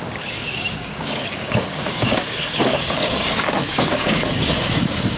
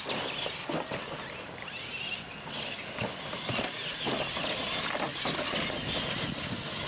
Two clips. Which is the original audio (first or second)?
second